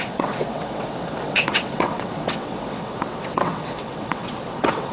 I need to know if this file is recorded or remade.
remade